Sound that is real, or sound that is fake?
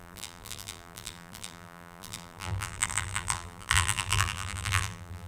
fake